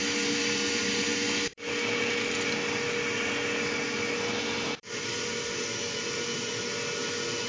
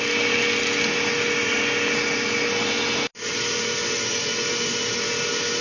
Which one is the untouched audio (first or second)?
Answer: second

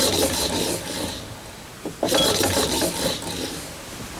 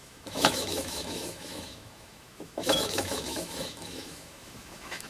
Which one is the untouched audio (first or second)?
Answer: first